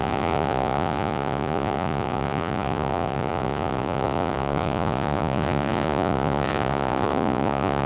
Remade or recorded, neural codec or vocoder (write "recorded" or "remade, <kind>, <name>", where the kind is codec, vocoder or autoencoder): remade, vocoder, Vocos